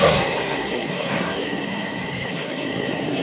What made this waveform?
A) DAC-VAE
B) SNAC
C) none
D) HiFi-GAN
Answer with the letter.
B